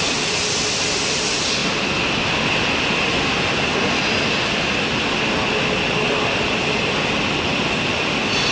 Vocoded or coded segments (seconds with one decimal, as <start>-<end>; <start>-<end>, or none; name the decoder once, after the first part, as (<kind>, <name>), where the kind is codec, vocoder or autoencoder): 1.6-2.5 (vocoder, BigVGAN v2)